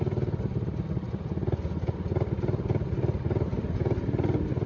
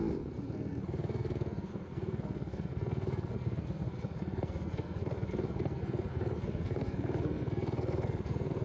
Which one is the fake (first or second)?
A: second